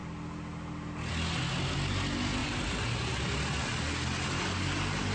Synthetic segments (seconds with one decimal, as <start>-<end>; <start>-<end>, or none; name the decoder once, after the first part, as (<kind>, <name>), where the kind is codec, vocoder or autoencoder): none